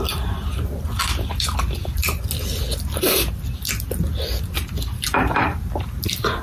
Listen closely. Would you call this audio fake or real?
real